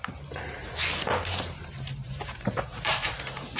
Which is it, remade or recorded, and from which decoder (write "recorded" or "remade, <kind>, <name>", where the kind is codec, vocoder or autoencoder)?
remade, vocoder, BigVGAN v2